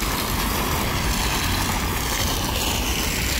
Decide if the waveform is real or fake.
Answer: real